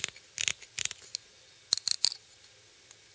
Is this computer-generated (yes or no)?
no